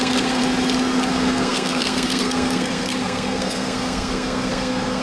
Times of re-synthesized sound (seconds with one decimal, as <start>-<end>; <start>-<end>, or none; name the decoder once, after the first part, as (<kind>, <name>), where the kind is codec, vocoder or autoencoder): 0.0-0.4 (codec, SNAC); 1.1-5.0